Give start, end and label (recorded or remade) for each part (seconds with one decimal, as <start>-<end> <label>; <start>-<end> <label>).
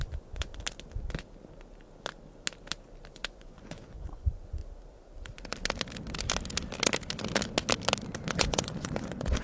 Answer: 0.0-0.5 remade; 0.5-3.1 recorded; 3.1-4.6 remade; 4.6-8.3 recorded; 8.3-9.4 remade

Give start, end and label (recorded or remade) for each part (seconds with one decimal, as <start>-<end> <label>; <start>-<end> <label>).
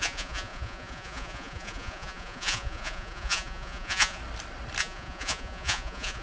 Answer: 0.0-4.2 remade; 4.2-4.8 recorded; 4.8-6.2 remade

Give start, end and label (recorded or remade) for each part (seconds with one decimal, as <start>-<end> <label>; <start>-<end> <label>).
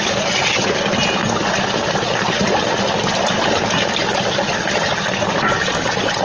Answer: 0.0-6.2 recorded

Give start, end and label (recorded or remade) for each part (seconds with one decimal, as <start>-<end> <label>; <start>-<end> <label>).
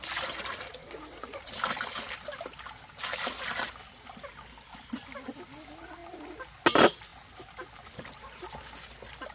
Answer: 0.0-0.8 recorded; 0.8-1.5 remade; 1.5-9.3 recorded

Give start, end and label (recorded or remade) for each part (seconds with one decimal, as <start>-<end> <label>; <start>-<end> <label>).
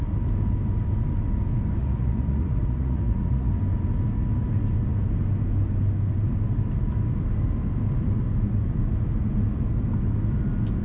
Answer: 0.0-1.8 recorded; 1.8-3.5 remade; 3.5-10.8 recorded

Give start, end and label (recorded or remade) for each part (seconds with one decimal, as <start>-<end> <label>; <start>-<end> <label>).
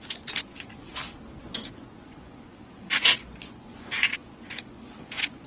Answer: 0.0-0.9 remade; 0.9-1.4 recorded; 1.4-5.5 remade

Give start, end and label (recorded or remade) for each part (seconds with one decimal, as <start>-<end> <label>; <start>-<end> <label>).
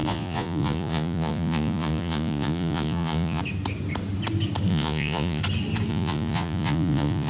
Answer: 0.0-3.4 remade; 3.4-4.7 recorded; 4.7-5.4 remade; 5.4-5.9 recorded; 5.9-7.3 remade